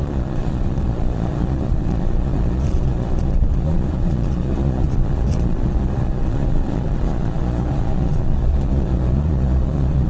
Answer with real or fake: fake